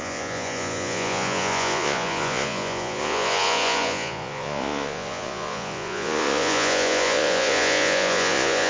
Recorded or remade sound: remade